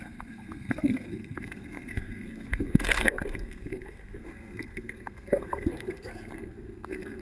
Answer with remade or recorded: remade